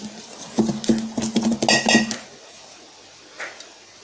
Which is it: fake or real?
real